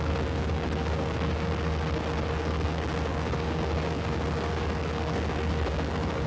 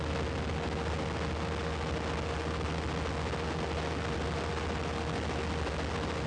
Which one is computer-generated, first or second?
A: first